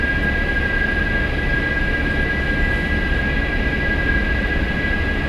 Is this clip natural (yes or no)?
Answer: yes